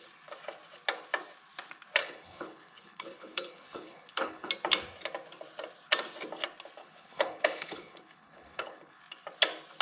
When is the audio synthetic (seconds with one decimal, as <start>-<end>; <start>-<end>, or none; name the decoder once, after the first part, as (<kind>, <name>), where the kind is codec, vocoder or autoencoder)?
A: 2.0-4.5 (codec, HILCodec); 6.8-9.0